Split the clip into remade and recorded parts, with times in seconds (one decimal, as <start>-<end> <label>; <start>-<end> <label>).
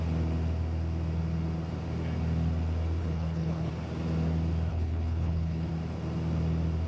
0.0-3.0 recorded; 3.0-3.7 remade; 3.7-4.7 recorded; 4.7-5.7 remade; 5.7-6.9 recorded